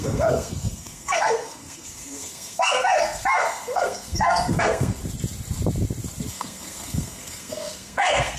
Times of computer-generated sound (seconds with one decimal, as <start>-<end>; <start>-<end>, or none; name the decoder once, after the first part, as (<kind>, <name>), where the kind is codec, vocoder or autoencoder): 0.0-5.0 (codec, SNAC); 6.3-8.4